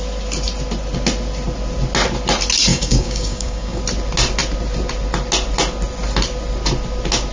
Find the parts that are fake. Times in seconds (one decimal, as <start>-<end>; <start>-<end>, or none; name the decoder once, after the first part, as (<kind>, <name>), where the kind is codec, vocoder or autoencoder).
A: 2.7-3.8 (codec, DAC)